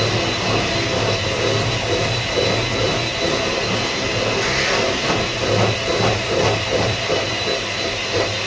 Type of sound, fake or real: real